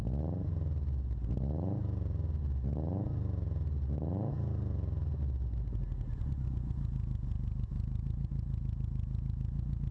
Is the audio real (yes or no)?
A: yes